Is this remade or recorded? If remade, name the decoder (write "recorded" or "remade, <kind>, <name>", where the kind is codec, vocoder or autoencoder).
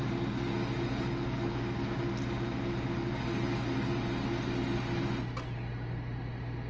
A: recorded